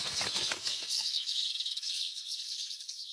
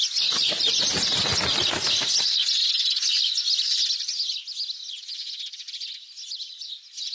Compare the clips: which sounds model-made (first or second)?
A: first